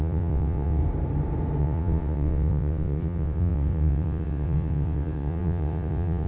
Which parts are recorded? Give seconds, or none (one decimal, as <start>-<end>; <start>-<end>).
0.8-1.6